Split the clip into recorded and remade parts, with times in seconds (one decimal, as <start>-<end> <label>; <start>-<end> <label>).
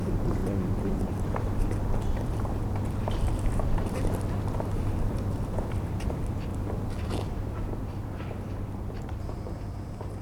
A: 0.0-6.5 remade; 6.5-7.1 recorded; 7.1-10.2 remade